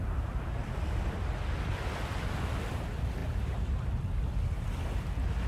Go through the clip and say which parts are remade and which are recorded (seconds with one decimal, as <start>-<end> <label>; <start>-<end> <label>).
0.0-3.2 recorded; 3.2-3.9 remade; 3.9-5.5 recorded

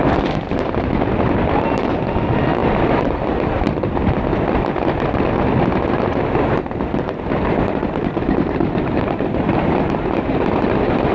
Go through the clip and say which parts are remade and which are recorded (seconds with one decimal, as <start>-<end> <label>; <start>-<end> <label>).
0.0-2.6 recorded; 2.6-4.7 remade; 4.7-5.7 recorded; 5.7-11.1 remade

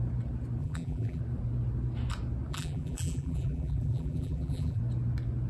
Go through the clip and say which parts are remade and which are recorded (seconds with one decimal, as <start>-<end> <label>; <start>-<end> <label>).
0.0-0.6 recorded; 0.6-1.2 remade; 1.2-2.5 recorded; 2.5-4.8 remade; 4.8-5.5 recorded

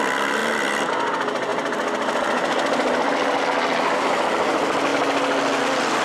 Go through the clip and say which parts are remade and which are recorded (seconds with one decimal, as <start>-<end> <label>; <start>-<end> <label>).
0.0-6.0 recorded

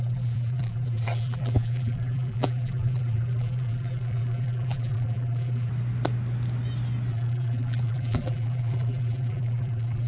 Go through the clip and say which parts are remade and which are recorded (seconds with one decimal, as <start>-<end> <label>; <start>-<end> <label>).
0.0-5.7 remade; 5.7-7.1 recorded; 7.1-10.1 remade